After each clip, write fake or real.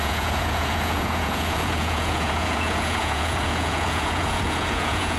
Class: fake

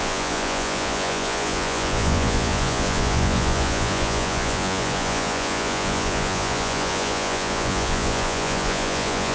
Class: fake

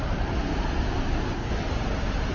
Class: real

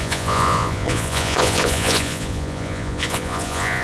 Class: fake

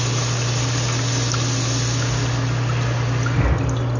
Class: real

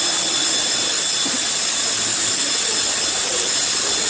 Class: real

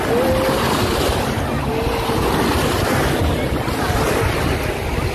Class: real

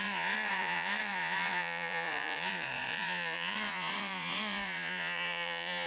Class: fake